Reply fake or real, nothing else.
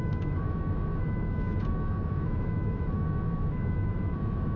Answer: fake